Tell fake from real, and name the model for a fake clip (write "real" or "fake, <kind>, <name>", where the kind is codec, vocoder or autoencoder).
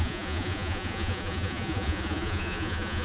fake, vocoder, Vocos